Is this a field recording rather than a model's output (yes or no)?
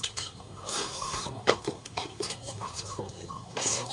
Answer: no